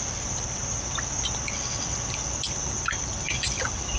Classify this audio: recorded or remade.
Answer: recorded